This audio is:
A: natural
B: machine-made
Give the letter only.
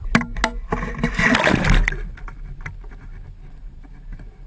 A